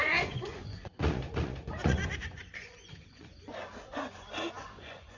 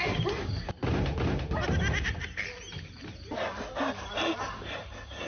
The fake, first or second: first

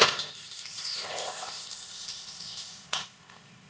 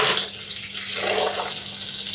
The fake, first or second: first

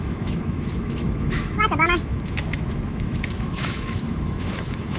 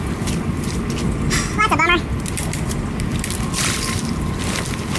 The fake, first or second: first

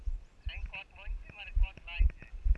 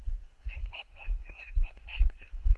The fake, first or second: second